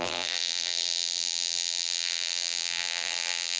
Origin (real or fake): fake